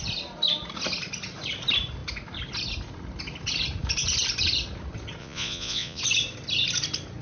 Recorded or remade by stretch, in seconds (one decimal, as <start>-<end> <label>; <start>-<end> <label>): 0.0-5.2 recorded; 5.2-6.0 remade; 6.0-7.2 recorded